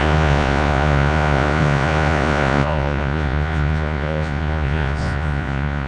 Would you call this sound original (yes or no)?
no